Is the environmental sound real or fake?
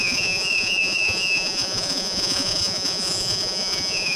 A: fake